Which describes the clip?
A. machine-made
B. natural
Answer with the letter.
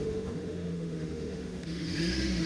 A